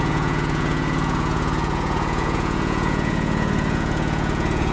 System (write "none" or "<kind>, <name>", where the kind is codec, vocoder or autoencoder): vocoder, Vocos